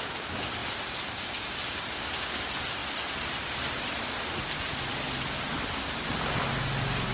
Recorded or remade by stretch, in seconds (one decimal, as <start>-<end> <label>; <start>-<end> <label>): 0.0-7.1 recorded